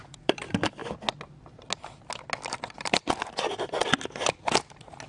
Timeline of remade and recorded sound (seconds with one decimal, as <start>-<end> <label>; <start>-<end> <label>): 0.0-0.8 remade; 0.8-2.5 recorded; 2.5-3.8 remade; 3.8-5.1 recorded